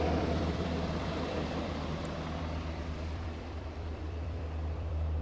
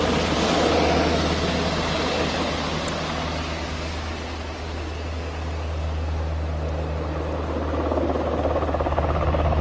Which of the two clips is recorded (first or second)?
second